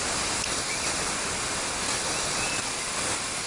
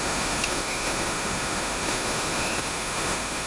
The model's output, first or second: second